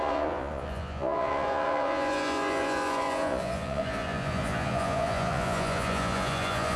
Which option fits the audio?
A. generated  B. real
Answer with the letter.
A